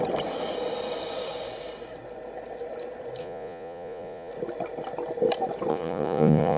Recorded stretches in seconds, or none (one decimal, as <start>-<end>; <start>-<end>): 0.0-3.2; 4.3-5.7